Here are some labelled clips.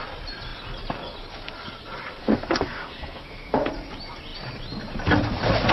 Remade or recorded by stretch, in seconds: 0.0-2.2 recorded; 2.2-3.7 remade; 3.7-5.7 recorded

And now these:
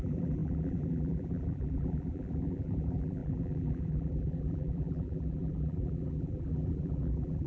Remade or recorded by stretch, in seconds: 0.0-7.5 remade

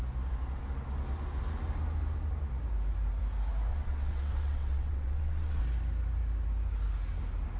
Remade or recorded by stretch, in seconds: 0.0-3.7 recorded; 3.7-5.6 remade; 5.6-7.6 recorded